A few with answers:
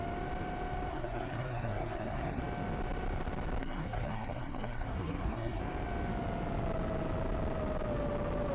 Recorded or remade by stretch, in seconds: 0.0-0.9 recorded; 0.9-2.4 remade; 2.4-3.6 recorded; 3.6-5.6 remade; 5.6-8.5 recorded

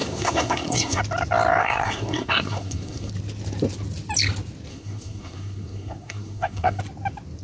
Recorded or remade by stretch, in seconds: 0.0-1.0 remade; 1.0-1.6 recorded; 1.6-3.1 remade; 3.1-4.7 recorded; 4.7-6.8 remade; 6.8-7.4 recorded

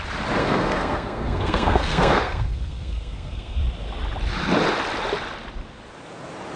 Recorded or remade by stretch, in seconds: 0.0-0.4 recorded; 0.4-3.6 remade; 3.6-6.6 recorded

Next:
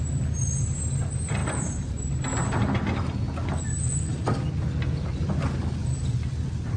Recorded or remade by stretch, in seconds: 0.0-6.8 recorded

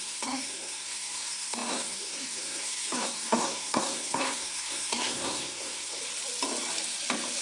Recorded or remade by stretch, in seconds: 0.0-6.0 remade; 6.0-7.4 recorded

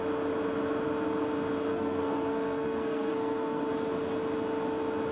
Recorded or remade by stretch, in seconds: 0.0-1.7 recorded; 1.7-3.7 remade; 3.7-5.1 recorded

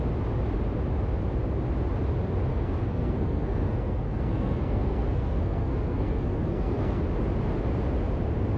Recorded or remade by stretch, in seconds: 0.0-2.5 recorded; 2.5-7.0 remade; 7.0-8.6 recorded

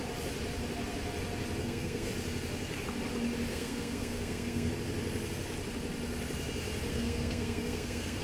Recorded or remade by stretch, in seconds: 0.0-1.6 recorded; 1.6-2.1 remade; 2.1-3.5 recorded; 3.5-4.7 remade; 4.7-6.9 recorded; 6.9-8.2 remade